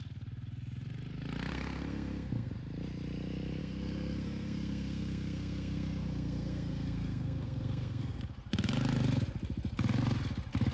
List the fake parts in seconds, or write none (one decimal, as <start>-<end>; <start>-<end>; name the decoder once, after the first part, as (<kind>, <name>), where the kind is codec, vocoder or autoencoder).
1.5-2.5 (codec, SNAC); 3.6-8.2